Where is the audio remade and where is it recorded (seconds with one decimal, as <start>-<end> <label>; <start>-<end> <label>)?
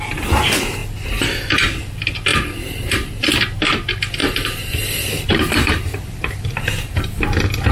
0.0-2.3 recorded; 2.3-3.3 remade; 3.3-4.2 recorded; 4.2-7.1 remade; 7.1-7.7 recorded